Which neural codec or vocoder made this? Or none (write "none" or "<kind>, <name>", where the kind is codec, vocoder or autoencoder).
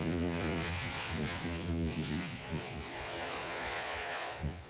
vocoder, Vocos